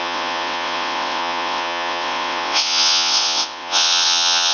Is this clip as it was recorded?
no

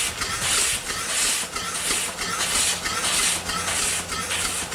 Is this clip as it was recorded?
yes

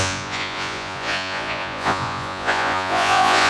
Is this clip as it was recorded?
no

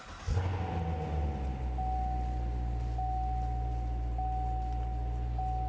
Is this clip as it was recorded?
yes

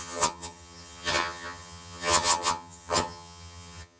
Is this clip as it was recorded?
no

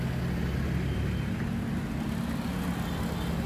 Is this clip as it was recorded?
yes